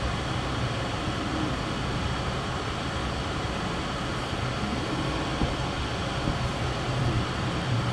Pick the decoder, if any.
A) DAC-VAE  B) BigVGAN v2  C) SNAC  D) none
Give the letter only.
D